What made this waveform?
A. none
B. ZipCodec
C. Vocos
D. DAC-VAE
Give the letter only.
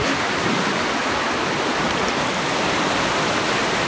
A